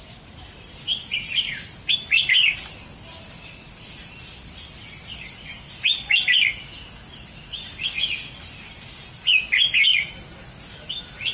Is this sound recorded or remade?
recorded